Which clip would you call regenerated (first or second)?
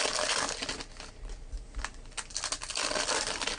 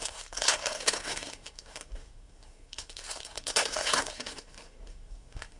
second